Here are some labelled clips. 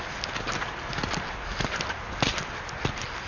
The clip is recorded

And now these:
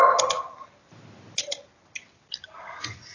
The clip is recorded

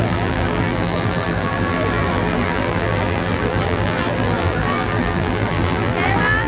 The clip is remade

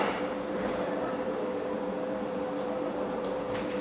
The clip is remade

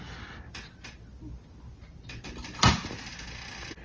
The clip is recorded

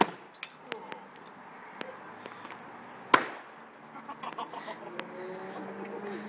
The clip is recorded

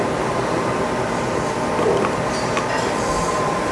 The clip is recorded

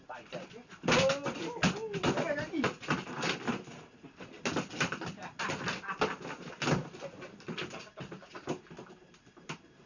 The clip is recorded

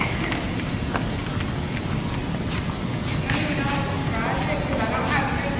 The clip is recorded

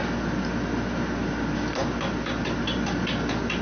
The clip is recorded